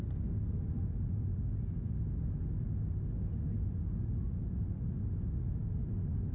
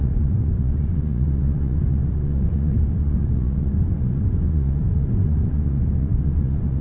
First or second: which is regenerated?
second